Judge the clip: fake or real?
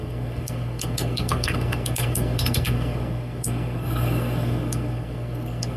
fake